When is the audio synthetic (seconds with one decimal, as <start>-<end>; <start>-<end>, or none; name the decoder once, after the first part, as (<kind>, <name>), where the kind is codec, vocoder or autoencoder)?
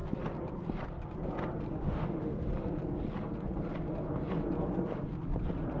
1.7-2.5 (autoencoder, DAC-VAE)